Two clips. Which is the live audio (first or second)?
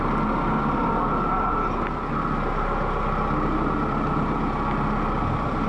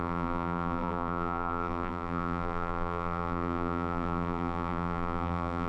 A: first